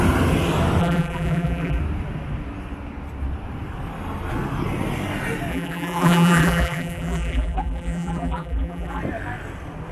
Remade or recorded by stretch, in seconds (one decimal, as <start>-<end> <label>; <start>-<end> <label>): 0.0-0.8 recorded; 0.8-1.8 remade; 1.8-5.5 recorded; 5.5-9.0 remade; 9.0-9.9 recorded

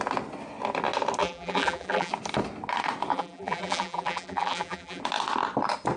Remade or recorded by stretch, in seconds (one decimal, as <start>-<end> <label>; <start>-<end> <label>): 0.0-1.2 recorded; 1.2-2.1 remade; 2.1-3.1 recorded; 3.1-5.0 remade; 5.0-6.0 recorded

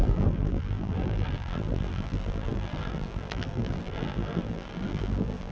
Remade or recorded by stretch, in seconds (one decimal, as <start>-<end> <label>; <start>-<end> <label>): 0.0-5.5 remade

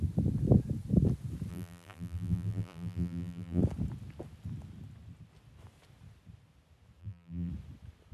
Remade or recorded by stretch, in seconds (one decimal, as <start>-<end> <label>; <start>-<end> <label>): 0.0-1.5 recorded; 1.5-3.6 remade; 3.6-7.0 recorded; 7.0-7.5 remade; 7.5-8.1 recorded

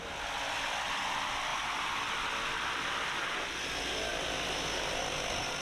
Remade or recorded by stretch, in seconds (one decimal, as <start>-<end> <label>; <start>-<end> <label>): 0.0-1.5 recorded; 1.5-2.2 remade; 2.2-5.6 recorded

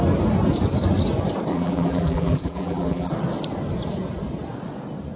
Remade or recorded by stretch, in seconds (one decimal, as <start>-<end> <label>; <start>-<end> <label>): 0.0-1.5 recorded; 1.5-3.1 remade; 3.1-5.2 recorded

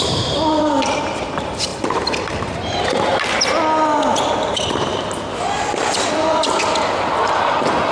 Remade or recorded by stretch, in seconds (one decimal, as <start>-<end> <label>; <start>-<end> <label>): 0.0-1.7 remade; 1.7-2.3 recorded; 2.3-3.1 remade; 3.1-7.2 recorded; 7.2-7.9 remade